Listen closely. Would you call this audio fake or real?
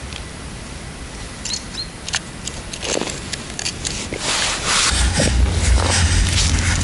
real